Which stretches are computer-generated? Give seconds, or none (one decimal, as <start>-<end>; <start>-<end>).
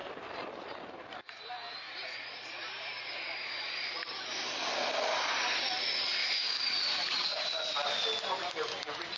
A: 0.0-3.1; 6.2-7.5